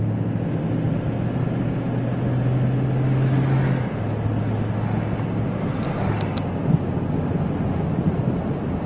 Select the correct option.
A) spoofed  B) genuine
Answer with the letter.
B